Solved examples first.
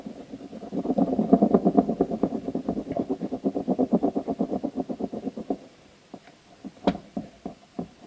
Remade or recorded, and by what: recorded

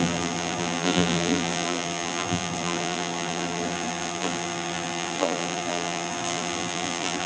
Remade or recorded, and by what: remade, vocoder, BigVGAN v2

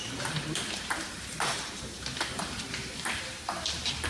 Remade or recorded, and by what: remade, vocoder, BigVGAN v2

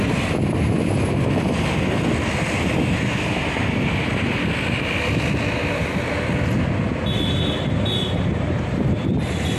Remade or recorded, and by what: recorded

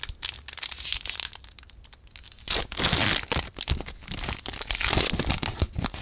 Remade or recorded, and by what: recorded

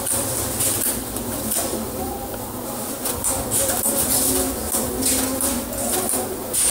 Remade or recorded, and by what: recorded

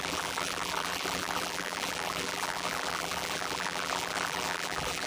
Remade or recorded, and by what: remade, vocoder, BigVGAN v2